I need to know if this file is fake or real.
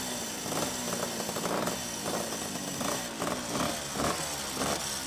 real